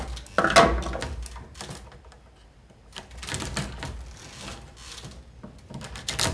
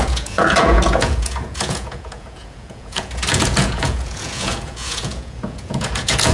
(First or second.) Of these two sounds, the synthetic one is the second